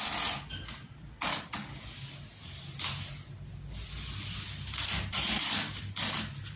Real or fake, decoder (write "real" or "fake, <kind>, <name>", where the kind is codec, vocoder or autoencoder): real